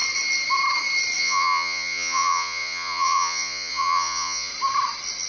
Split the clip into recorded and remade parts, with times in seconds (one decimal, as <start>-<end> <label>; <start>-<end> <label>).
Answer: 0.0-1.2 recorded; 1.2-4.5 remade; 4.5-5.3 recorded